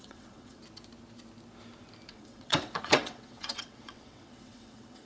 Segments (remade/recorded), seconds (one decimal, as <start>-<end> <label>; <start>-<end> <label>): 0.0-0.6 remade; 0.6-2.1 recorded; 2.1-5.0 remade